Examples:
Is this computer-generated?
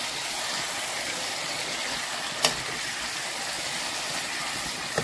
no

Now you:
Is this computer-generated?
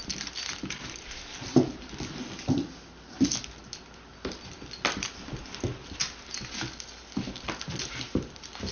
no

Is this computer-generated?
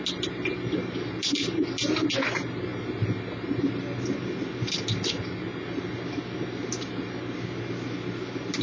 no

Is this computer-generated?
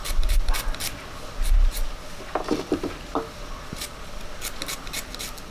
no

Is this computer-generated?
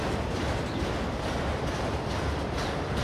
no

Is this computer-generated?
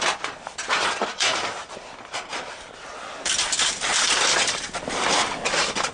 yes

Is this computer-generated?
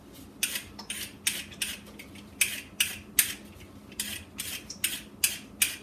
no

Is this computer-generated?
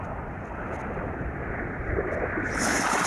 no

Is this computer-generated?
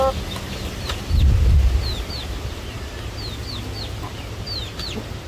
no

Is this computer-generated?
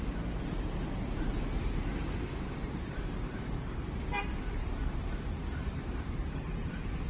yes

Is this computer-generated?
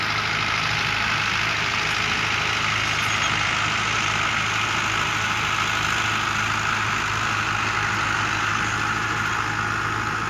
no